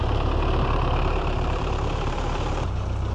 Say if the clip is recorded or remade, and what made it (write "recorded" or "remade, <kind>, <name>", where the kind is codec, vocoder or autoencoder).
remade, vocoder, BigVGAN v2